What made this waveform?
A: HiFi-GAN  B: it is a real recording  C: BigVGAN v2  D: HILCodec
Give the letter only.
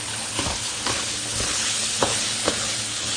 D